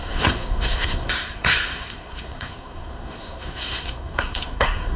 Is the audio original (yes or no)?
no